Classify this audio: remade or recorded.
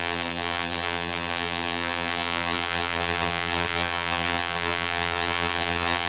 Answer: remade